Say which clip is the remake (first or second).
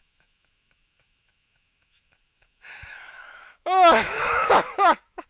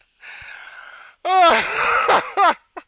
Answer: first